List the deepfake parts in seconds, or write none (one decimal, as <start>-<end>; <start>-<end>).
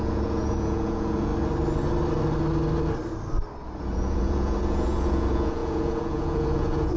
0.0-1.3; 3.8-7.0